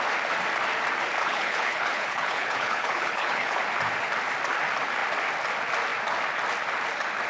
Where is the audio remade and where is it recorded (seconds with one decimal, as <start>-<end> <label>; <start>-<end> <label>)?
0.0-1.2 recorded; 1.2-3.6 remade; 3.6-7.3 recorded